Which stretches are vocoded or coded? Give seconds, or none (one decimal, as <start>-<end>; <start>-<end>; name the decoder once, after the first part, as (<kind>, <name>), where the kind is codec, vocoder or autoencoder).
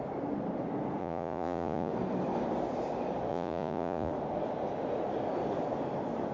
1.0-1.9 (vocoder, Vocos); 3.3-4.1